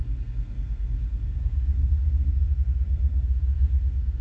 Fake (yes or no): yes